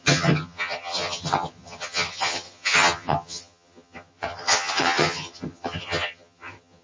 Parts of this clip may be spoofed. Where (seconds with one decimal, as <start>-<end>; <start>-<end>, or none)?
0.0-6.8